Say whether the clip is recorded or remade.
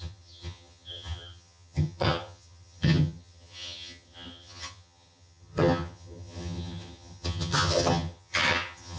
remade